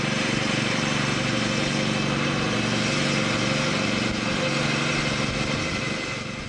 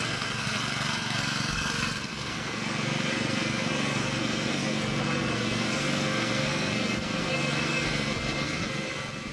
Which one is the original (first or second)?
first